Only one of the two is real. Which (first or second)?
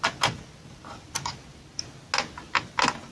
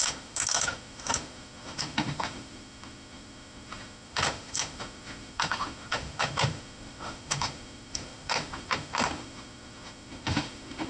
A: first